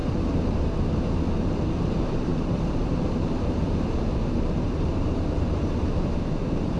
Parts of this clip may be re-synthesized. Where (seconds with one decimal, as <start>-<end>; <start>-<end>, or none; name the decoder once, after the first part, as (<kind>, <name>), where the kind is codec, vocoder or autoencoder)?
1.8-6.8 (vocoder, BigVGAN v2)